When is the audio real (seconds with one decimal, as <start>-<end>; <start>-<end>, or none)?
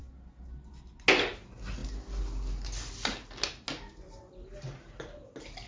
0.0-5.7